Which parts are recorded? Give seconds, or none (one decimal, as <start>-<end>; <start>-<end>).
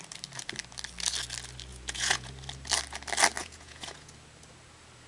0.0-1.7; 2.3-3.4; 4.1-5.1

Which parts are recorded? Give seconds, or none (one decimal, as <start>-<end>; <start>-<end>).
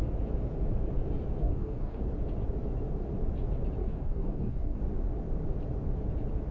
0.0-1.4; 2.0-3.8; 4.8-6.5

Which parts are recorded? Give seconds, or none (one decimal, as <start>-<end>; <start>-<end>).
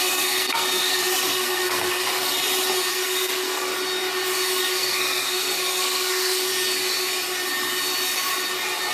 2.4-2.9; 3.7-4.6; 6.5-8.9